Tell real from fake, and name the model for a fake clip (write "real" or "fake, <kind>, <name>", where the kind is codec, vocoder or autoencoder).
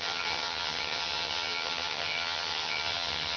fake, vocoder, HiFi-GAN